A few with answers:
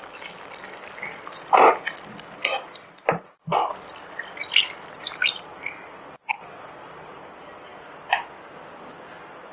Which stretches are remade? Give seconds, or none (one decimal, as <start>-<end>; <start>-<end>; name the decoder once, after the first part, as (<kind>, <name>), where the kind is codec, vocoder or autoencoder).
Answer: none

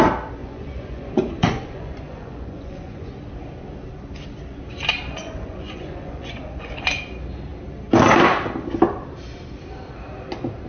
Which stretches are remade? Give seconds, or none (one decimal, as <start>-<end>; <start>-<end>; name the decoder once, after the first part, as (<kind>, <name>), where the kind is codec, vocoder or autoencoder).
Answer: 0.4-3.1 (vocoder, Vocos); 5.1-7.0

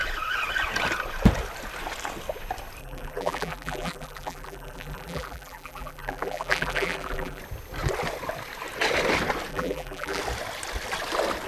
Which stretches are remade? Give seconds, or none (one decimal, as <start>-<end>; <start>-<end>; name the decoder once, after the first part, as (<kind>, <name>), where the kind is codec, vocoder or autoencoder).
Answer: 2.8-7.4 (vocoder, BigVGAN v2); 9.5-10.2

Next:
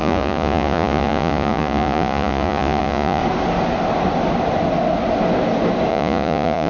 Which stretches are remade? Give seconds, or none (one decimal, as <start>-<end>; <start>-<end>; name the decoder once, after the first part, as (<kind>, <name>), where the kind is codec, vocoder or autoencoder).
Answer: 0.0-3.2 (vocoder, Vocos); 5.9-6.7

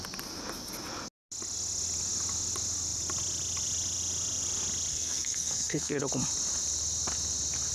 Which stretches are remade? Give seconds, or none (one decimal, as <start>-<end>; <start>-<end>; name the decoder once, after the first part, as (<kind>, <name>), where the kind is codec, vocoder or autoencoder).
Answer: 4.9-5.9 (codec, SNAC)